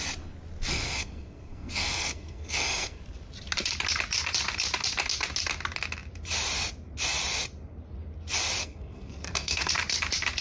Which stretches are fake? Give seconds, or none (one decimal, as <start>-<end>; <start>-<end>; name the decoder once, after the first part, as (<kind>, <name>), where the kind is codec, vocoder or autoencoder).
0.7-3.0 (codec, SNAC); 8.6-9.7